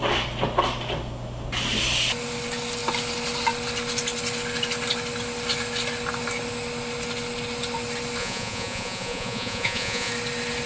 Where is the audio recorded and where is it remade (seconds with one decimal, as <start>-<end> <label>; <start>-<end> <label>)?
0.0-8.2 recorded; 8.2-10.1 remade; 10.1-10.7 recorded